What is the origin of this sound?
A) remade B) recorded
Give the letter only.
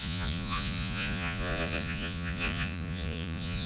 A